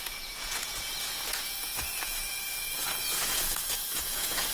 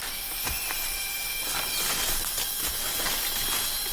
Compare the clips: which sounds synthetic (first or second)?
first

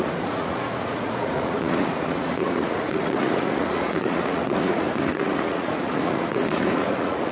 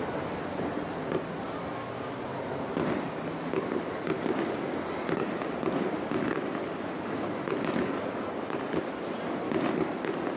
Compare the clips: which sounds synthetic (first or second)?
first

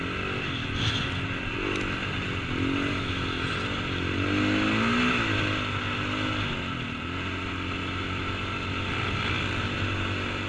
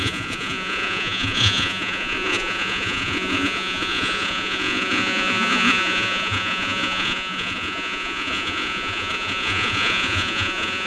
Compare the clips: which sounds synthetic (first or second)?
second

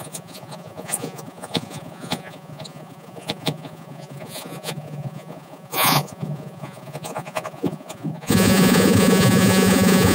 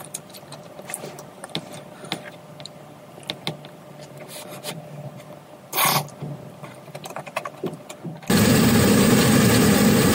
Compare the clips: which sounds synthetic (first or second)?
first